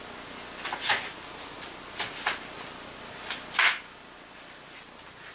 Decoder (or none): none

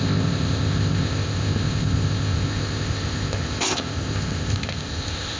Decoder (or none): codec, ZipCodec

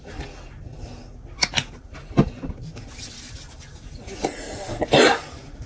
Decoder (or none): none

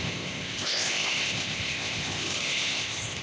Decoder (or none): codec, ZipCodec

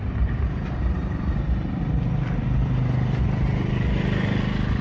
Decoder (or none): none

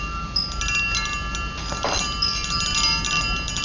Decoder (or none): none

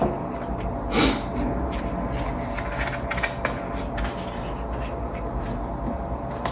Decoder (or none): none